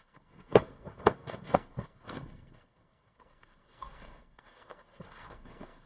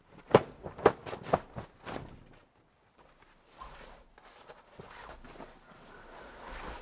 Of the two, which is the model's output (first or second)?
first